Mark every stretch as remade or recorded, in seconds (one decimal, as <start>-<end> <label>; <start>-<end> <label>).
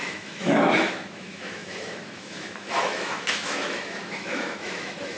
0.0-5.2 remade